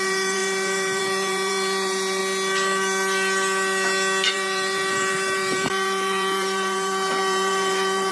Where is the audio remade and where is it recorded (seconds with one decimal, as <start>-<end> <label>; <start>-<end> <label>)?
0.0-2.2 remade; 2.2-4.3 recorded; 4.3-8.1 remade